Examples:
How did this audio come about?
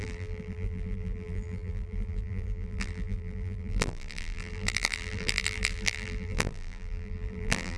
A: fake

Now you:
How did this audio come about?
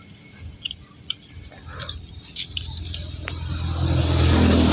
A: real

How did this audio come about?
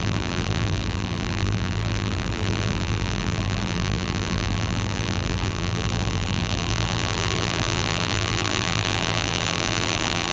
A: fake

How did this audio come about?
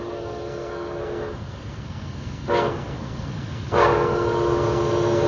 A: fake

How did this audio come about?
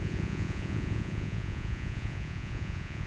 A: fake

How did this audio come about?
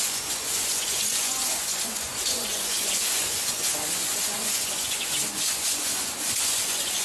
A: fake